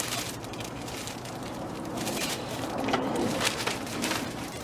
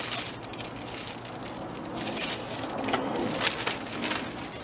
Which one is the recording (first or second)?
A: second